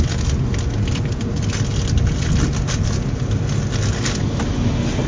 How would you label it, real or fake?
real